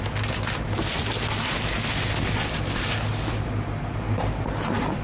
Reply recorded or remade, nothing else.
recorded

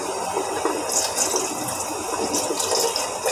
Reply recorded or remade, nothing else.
recorded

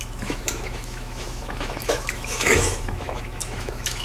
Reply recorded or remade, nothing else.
remade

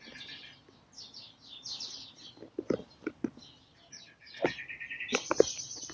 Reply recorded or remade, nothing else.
recorded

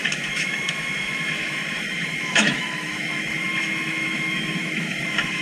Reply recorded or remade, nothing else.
remade